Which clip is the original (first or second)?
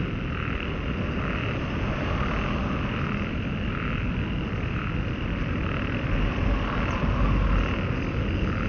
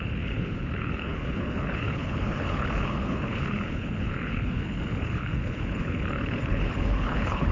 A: first